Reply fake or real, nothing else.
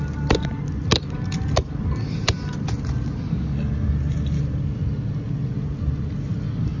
real